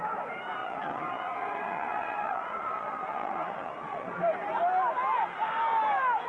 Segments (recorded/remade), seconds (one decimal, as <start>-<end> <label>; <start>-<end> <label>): 0.0-0.6 recorded; 0.6-4.2 remade; 4.2-6.3 recorded